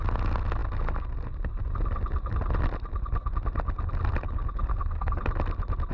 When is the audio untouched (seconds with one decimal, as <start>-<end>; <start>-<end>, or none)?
0.0-4.7; 5.2-5.9